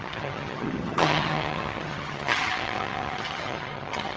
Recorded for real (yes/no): no